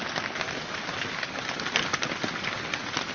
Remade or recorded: recorded